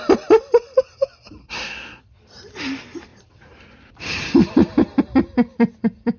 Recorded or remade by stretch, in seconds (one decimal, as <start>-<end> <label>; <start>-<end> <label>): 0.0-1.4 recorded; 1.4-2.0 remade; 2.0-6.2 recorded